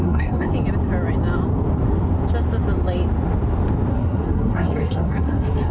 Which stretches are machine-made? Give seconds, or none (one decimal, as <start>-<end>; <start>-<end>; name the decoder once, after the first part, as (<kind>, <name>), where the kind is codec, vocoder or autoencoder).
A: 0.0-0.5 (codec, SNAC); 3.9-5.7